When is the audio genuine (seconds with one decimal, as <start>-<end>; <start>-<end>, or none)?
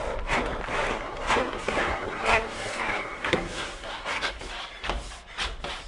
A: 0.0-0.9; 4.4-5.9